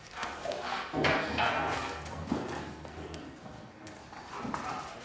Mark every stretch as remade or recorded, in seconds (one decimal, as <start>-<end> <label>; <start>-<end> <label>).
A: 0.0-4.0 remade; 4.0-5.0 recorded